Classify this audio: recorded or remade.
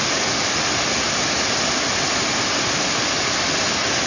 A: recorded